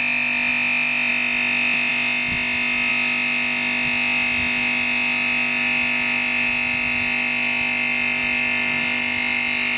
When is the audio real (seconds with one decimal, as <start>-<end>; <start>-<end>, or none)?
0.0-9.8